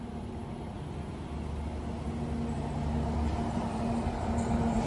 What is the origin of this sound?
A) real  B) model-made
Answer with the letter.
A